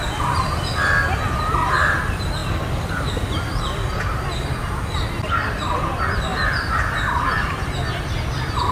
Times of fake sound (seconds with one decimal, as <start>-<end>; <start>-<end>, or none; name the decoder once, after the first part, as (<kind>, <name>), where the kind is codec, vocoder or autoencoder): none